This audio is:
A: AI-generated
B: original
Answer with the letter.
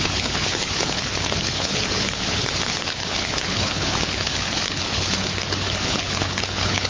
A